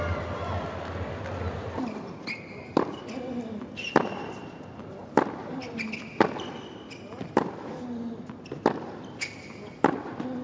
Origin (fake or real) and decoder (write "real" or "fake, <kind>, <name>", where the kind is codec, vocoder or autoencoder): real